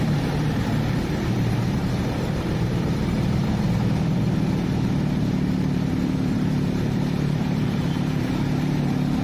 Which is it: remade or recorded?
remade